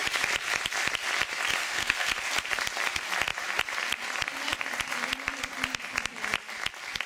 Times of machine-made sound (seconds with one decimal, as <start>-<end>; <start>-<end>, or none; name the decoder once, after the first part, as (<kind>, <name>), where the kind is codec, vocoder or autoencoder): 1.6-2.2 (codec, SNAC)

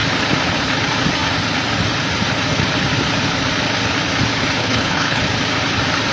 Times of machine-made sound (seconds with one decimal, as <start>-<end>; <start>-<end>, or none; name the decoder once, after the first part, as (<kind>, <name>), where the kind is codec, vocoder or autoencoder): 4.6-5.2 (codec, HILCodec)

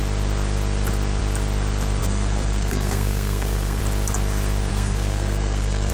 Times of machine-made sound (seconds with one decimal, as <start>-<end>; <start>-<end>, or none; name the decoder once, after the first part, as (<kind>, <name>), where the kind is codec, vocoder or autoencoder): 2.0-3.8 (codec, SNAC); 4.7-5.9

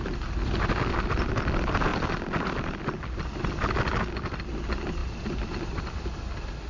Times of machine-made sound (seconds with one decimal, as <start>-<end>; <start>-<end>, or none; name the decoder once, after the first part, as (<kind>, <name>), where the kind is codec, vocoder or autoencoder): none

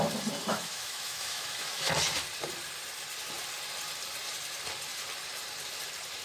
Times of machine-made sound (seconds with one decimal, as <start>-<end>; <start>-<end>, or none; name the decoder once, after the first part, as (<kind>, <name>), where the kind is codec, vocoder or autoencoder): 0.5-1.9 (autoencoder, DAC-VAE)

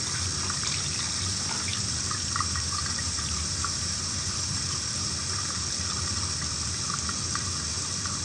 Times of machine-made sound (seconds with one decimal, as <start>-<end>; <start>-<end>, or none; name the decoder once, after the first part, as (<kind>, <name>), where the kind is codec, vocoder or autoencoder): 1.7-5.7 (vocoder, BigVGAN v2)

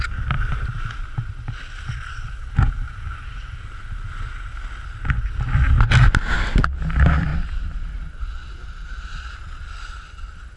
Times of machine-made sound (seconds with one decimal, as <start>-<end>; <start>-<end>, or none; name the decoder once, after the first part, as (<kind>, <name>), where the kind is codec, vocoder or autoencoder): none